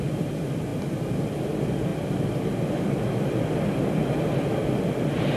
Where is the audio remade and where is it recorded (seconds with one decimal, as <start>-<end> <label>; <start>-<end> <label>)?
0.0-5.4 recorded